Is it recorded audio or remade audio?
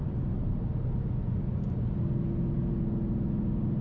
recorded